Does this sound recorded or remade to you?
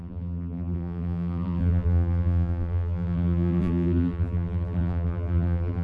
remade